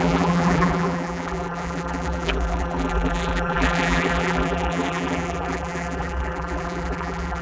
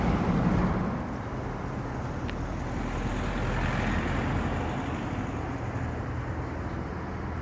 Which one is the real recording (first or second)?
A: second